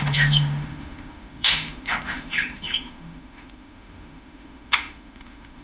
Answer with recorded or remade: remade